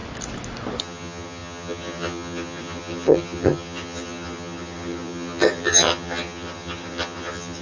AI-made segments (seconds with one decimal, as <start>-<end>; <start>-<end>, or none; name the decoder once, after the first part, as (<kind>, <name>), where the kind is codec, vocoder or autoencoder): 0.8-7.6 (vocoder, HiFi-GAN)